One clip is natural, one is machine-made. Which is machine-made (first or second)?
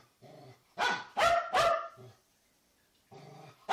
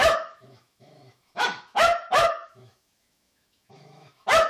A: second